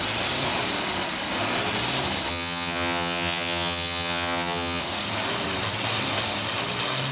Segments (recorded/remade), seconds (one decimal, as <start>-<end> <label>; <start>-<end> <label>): 0.0-2.3 recorded; 2.3-4.8 remade; 4.8-7.1 recorded